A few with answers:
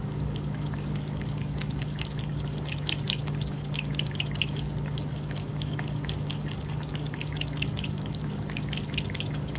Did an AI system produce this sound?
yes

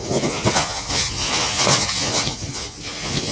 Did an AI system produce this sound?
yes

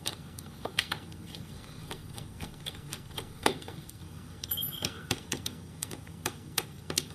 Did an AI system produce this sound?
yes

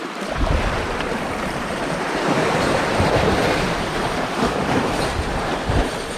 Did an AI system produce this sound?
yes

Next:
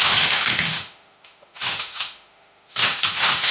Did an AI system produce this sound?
yes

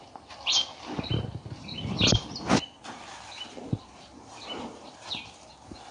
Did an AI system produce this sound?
no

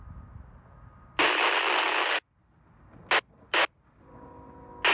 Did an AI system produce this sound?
no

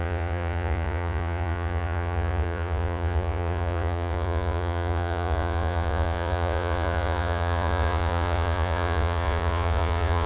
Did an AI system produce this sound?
yes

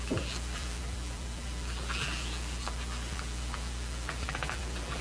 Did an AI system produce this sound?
yes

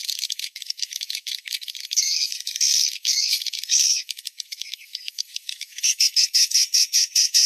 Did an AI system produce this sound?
yes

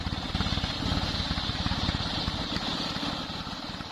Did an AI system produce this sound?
no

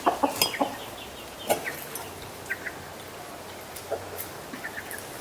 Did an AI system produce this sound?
no